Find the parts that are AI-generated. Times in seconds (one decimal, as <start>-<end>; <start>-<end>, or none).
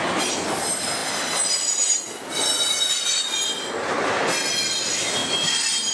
none